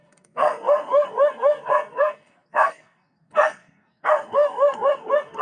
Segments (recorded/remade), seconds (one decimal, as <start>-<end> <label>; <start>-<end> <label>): 0.0-5.4 remade